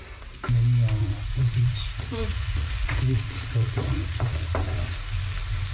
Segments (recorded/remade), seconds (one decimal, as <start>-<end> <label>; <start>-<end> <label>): 0.0-1.0 recorded; 1.0-4.4 remade; 4.4-5.7 recorded